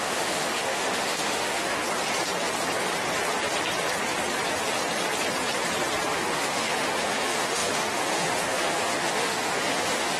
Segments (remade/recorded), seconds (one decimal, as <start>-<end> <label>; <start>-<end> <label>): 0.0-1.8 remade; 1.8-6.1 recorded; 6.1-10.2 remade